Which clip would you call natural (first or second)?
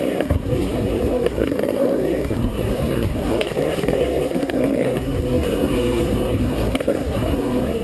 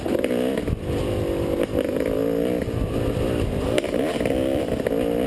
second